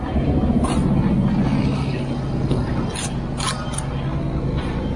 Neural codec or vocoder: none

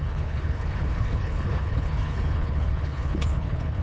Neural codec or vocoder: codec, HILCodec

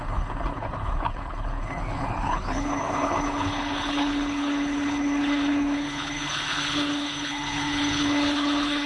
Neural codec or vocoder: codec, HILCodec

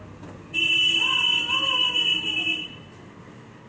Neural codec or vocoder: none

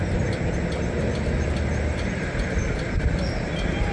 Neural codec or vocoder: none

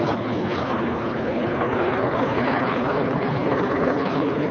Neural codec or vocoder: codec, HILCodec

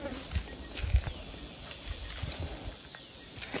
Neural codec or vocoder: none